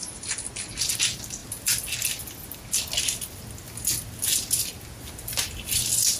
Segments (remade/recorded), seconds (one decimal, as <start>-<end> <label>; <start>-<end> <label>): 0.0-6.2 recorded

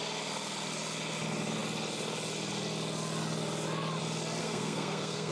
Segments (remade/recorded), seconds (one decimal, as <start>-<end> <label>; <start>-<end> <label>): 0.0-4.4 recorded; 4.4-5.3 remade

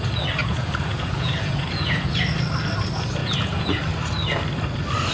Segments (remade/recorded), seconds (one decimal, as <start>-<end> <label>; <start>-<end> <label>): 0.0-0.4 recorded; 0.4-2.1 remade; 2.1-3.2 recorded; 3.2-3.8 remade; 3.8-5.1 recorded

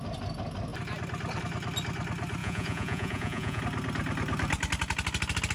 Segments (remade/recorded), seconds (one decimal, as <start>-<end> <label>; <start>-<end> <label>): 0.0-2.4 recorded; 2.4-3.6 remade; 3.6-5.5 recorded

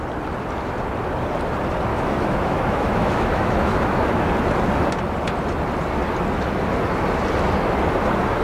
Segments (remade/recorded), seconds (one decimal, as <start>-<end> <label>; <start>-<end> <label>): 0.0-1.9 recorded; 1.9-4.2 remade; 4.2-8.4 recorded

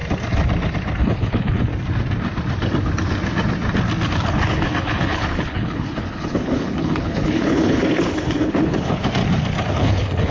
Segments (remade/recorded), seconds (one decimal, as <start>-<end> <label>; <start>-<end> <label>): 0.0-1.0 recorded; 1.0-1.7 remade; 1.7-4.1 recorded; 4.1-9.2 remade; 9.2-9.7 recorded; 9.7-10.3 remade

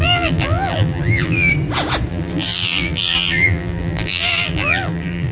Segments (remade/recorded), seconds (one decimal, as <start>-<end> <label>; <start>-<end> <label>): 0.0-1.5 remade; 1.5-2.1 recorded; 2.1-5.3 remade